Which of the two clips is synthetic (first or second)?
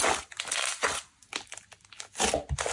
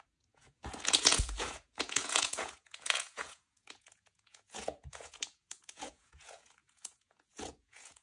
second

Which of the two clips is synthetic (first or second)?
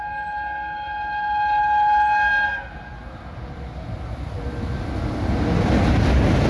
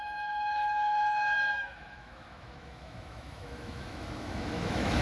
second